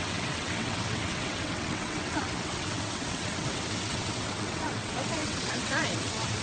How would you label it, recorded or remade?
remade